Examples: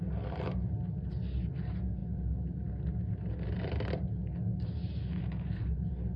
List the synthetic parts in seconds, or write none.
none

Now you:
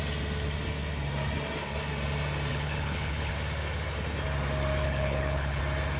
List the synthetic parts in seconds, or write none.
2.5-3.3 (codec, HILCodec); 4.8-5.6

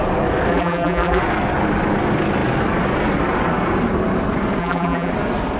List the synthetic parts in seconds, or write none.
0.5-1.2 (vocoder, BigVGAN v2); 4.6-5.1

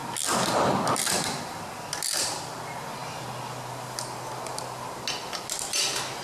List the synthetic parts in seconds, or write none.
none

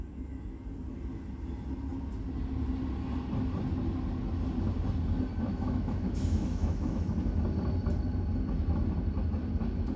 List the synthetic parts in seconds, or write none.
5.5-7.1 (autoencoder, DAC-VAE)

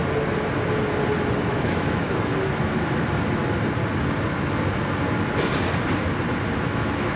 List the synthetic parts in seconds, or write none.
1.4-2.3 (autoencoder, DAC-VAE); 6.6-7.2

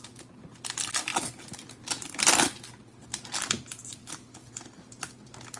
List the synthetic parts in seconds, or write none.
none